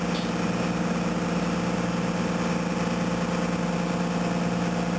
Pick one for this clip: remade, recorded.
recorded